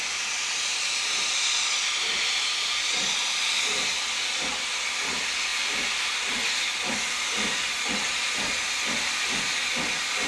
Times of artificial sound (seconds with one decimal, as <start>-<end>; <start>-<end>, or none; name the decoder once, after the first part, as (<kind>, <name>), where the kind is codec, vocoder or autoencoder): none

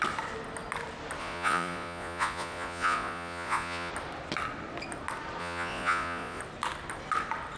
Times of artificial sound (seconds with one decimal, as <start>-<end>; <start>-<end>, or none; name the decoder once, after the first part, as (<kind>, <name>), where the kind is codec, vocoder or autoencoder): 1.2-3.9 (vocoder, Vocos); 5.4-6.4

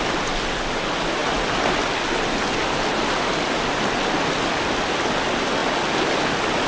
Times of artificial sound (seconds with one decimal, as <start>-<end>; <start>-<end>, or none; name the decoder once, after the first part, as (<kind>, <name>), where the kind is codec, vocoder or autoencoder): none

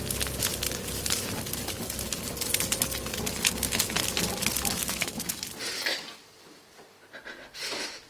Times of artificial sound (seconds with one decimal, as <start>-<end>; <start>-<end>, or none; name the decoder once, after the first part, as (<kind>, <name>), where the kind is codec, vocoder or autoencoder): 4.7-5.4 (autoencoder, DAC-VAE)